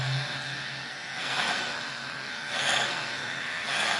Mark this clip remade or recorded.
remade